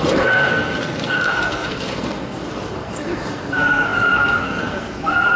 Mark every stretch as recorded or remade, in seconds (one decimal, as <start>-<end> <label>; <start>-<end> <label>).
0.0-5.4 remade